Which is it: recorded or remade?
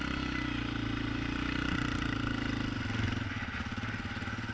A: recorded